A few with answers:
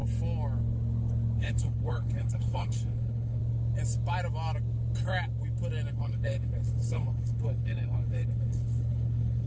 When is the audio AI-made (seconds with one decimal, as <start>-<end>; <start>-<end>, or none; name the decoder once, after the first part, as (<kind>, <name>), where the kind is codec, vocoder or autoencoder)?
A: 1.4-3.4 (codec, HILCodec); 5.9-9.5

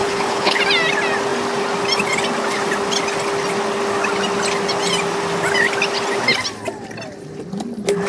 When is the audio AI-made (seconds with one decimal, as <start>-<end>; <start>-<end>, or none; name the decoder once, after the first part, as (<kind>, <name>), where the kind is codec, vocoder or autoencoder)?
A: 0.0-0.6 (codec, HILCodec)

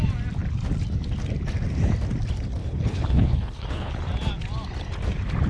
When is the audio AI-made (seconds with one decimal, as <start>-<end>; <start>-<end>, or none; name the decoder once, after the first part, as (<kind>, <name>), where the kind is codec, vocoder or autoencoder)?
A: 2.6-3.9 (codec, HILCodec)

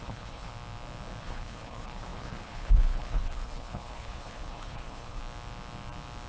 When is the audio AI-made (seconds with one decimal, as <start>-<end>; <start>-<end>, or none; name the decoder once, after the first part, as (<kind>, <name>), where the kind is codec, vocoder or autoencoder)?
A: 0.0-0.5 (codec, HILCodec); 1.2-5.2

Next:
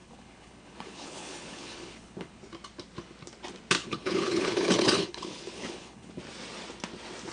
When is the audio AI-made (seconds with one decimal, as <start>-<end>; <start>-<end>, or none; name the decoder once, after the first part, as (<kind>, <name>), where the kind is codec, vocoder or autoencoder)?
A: 0.0-2.4 (codec, HILCodec); 3.8-6.2

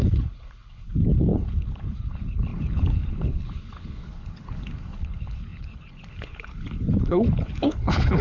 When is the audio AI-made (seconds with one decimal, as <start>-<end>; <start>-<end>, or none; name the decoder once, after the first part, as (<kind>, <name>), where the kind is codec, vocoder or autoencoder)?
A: 0.0-8.2 (codec, HILCodec)

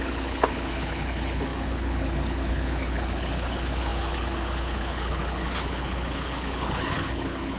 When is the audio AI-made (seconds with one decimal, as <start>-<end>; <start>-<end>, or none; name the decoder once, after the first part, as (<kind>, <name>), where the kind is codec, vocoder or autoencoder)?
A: 0.0-7.6 (codec, HILCodec)